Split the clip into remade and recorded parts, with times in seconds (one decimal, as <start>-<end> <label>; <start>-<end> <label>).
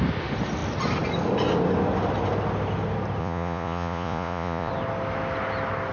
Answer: 0.0-3.2 recorded; 3.2-4.7 remade; 4.7-5.9 recorded